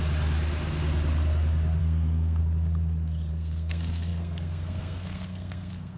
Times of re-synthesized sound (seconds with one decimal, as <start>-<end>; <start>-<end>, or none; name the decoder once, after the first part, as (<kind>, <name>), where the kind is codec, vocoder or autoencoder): 1.8-2.4 (codec, SNAC); 3.3-6.0